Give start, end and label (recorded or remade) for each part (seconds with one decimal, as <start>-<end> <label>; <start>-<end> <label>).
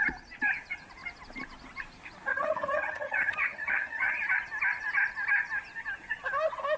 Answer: 0.0-2.3 recorded; 2.3-4.2 remade; 4.2-6.8 recorded